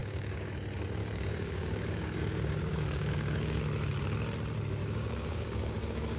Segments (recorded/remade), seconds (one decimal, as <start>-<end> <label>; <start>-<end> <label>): 0.0-0.5 remade; 0.5-1.0 recorded; 1.0-3.6 remade; 3.6-4.8 recorded; 4.8-6.2 remade